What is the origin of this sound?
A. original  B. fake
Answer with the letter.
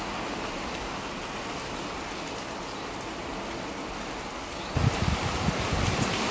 A